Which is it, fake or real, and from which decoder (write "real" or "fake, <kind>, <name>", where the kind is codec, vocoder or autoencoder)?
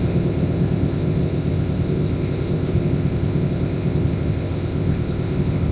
fake, codec, ZipCodec